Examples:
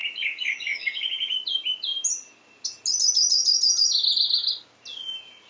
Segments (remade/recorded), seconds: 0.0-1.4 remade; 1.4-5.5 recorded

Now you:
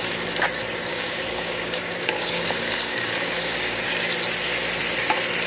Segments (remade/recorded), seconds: 0.0-0.9 recorded; 0.9-3.8 remade; 3.8-5.5 recorded